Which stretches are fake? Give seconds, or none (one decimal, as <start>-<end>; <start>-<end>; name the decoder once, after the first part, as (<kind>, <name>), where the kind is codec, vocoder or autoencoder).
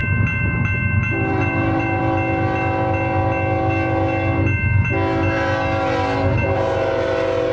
0.0-2.0 (vocoder, BigVGAN v2)